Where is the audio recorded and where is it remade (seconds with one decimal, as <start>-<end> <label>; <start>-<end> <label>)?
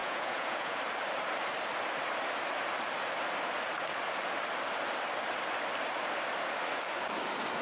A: 0.0-0.8 remade; 0.8-7.6 recorded